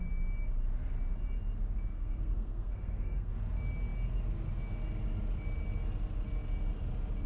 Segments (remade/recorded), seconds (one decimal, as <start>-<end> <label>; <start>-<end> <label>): 0.0-1.9 recorded; 1.9-3.3 remade; 3.3-7.3 recorded